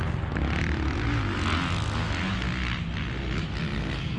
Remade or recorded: recorded